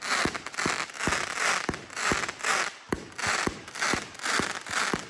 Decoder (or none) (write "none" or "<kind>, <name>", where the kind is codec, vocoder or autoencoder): none